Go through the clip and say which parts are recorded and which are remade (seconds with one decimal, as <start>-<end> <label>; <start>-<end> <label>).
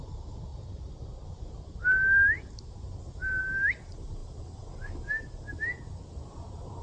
0.0-6.8 recorded